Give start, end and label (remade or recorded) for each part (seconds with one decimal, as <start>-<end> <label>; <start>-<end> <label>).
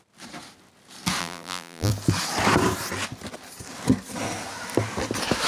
0.0-1.2 recorded; 1.2-1.9 remade; 1.9-5.5 recorded